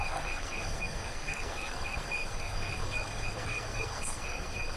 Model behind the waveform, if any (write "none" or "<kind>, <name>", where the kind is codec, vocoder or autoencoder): codec, SNAC